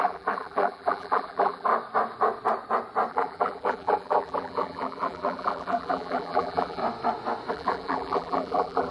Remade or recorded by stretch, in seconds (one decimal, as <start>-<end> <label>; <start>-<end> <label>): 0.0-1.7 remade; 1.7-3.1 recorded; 3.1-6.8 remade; 6.8-7.5 recorded; 7.5-8.9 remade